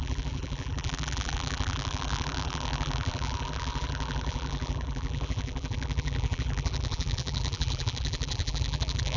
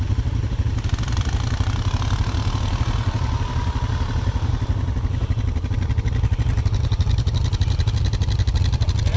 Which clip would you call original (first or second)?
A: second